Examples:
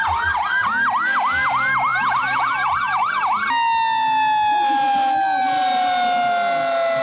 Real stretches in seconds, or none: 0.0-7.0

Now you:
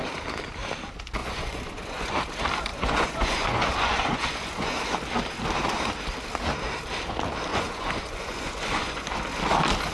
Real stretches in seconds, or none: 0.0-1.2; 2.1-2.7; 4.8-7.5; 9.1-9.9

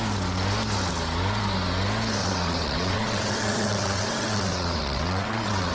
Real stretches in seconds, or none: 0.0-2.2